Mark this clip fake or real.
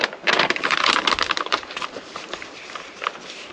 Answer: fake